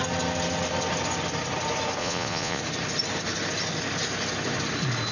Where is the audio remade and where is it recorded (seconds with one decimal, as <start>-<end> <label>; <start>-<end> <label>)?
0.0-2.0 recorded; 2.0-2.6 remade; 2.6-5.1 recorded